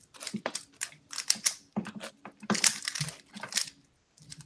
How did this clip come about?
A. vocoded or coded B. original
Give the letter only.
A